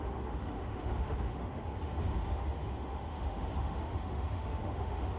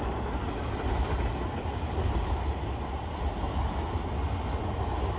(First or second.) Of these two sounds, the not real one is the first